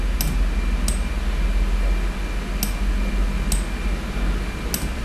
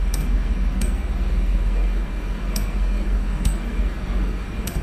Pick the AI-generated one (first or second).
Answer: second